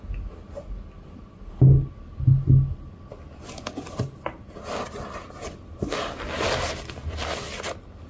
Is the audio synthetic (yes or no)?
no